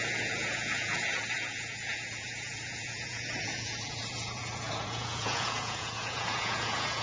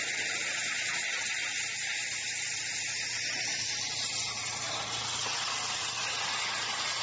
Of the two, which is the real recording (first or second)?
second